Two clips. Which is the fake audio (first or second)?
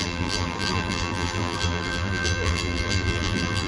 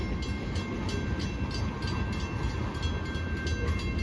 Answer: first